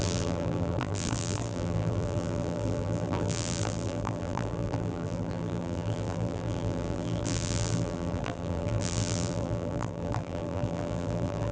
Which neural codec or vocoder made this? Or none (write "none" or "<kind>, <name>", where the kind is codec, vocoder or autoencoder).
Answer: vocoder, BigVGAN v2